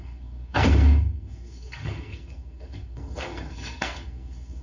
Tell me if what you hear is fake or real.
fake